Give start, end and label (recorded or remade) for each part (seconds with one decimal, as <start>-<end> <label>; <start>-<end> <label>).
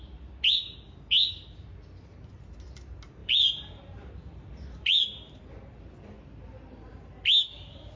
0.0-3.2 recorded; 3.2-5.4 remade; 5.4-8.0 recorded